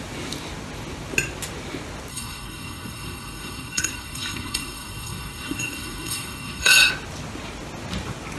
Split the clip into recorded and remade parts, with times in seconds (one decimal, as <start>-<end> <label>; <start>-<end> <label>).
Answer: 0.0-2.1 recorded; 2.1-6.9 remade; 6.9-8.4 recorded